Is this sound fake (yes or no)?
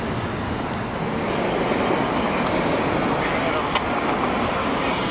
no